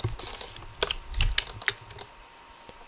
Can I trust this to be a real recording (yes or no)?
yes